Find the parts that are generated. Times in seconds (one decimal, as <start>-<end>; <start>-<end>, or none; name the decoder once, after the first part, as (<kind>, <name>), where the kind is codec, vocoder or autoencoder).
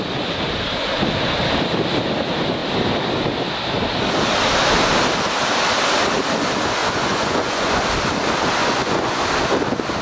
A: 6.8-7.8 (vocoder, Vocos); 8.6-9.2